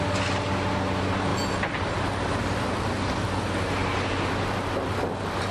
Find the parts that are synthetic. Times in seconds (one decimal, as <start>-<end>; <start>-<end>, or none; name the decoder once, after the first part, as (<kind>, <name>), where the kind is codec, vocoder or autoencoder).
none

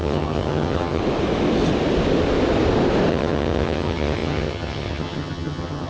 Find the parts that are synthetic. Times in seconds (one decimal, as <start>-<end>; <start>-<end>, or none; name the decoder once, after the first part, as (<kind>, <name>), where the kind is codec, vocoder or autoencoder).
0.0-1.0 (vocoder, HiFi-GAN); 3.1-5.9

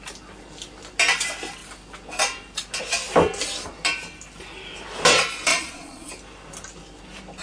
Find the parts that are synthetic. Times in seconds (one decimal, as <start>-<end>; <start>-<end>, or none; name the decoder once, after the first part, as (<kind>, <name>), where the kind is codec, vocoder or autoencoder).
5.5-6.1 (vocoder, Vocos)